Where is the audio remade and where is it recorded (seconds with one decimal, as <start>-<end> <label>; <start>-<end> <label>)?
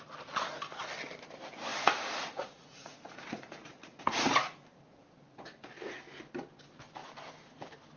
0.0-1.7 recorded; 1.7-6.0 remade; 6.0-8.0 recorded